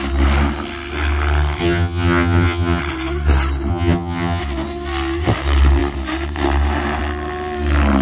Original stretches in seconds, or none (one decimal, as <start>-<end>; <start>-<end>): 0.0-1.6; 2.8-3.7; 4.4-8.0

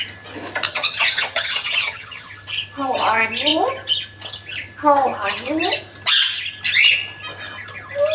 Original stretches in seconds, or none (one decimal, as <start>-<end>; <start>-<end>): 0.0-0.7; 2.3-8.1